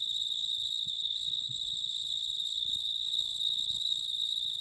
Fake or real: fake